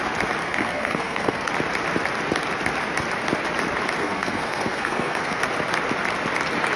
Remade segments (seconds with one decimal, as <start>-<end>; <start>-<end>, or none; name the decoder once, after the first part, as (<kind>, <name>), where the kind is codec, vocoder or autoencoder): 0.4-1.5 (codec, SNAC); 4.0-5.4